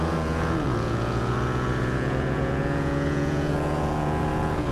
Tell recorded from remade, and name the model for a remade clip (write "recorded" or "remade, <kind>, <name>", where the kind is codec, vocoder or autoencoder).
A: remade, vocoder, Vocos